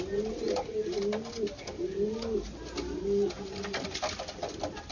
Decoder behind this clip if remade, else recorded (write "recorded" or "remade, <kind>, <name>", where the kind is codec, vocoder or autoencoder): recorded